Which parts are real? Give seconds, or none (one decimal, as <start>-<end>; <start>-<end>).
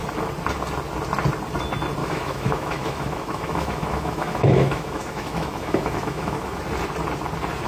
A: 0.0-2.0; 6.6-7.7